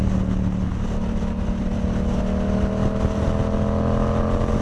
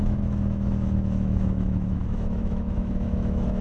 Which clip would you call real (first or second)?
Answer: first